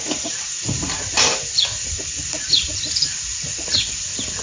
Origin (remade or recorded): recorded